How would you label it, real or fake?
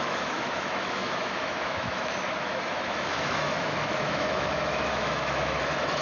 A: fake